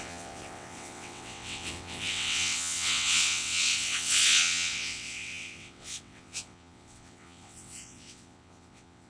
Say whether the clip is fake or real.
fake